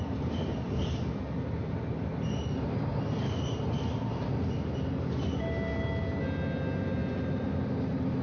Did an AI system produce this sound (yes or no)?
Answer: no